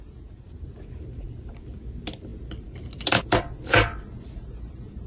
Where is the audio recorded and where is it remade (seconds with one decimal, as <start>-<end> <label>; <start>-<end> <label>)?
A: 0.0-5.1 recorded